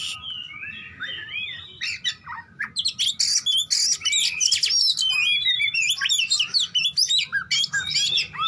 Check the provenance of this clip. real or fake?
real